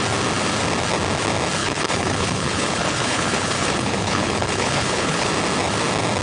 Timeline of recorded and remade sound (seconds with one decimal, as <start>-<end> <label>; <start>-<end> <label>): 0.0-1.6 recorded; 1.6-5.3 remade; 5.3-6.2 recorded